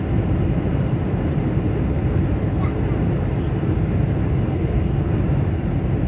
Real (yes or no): no